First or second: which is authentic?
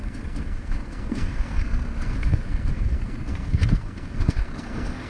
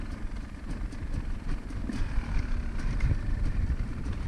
second